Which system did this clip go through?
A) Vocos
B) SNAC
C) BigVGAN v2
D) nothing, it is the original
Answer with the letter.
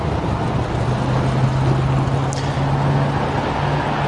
D